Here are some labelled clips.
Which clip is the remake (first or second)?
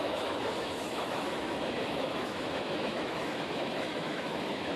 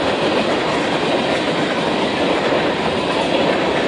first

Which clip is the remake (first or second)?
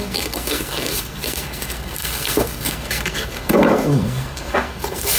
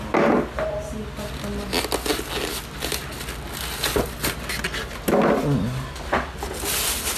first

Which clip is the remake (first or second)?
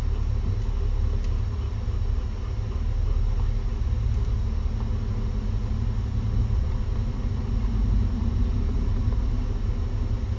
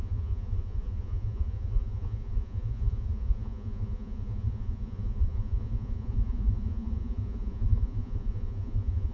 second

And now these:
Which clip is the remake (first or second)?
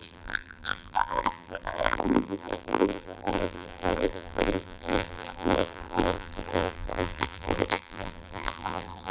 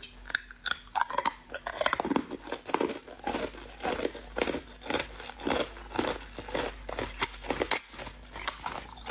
first